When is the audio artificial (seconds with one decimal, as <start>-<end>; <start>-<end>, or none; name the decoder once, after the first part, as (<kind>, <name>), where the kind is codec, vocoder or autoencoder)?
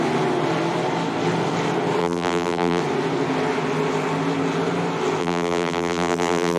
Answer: 2.0-2.8 (vocoder, BigVGAN v2); 5.2-6.6